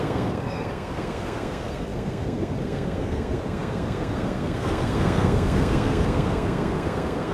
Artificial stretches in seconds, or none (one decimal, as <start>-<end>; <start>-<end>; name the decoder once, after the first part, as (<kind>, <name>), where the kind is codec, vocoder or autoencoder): 0.0-7.3 (codec, SNAC)